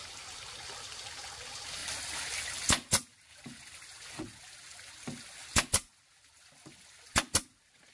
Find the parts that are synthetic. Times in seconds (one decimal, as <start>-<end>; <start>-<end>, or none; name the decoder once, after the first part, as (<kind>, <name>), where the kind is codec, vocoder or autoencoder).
none